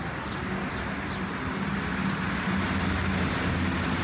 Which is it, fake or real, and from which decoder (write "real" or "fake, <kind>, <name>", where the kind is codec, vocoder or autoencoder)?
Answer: real